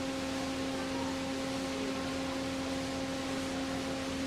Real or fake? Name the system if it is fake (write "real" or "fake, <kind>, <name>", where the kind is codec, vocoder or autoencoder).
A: real